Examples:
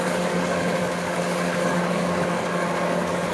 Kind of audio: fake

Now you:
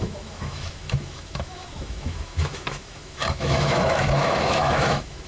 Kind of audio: fake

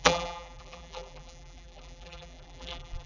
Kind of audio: fake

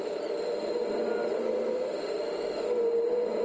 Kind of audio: fake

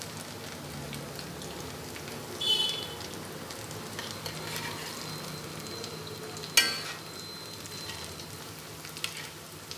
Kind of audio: real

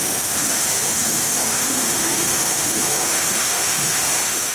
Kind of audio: fake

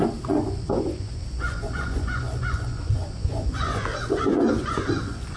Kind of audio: fake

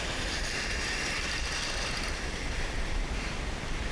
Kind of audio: real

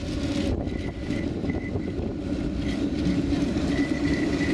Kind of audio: real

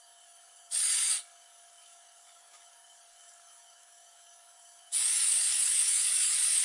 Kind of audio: fake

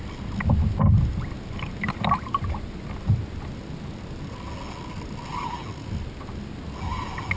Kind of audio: real